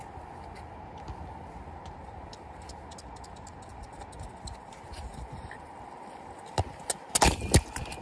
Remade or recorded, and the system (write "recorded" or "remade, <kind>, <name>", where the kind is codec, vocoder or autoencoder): recorded